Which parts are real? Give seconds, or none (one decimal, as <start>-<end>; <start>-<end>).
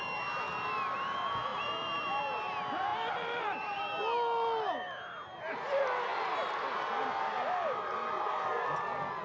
0.0-1.5; 2.2-2.9; 3.8-6.1; 6.8-9.2